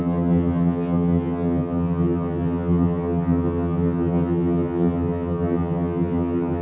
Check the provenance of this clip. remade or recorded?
remade